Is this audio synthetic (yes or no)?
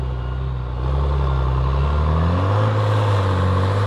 no